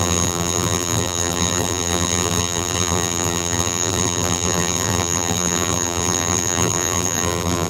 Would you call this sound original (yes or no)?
no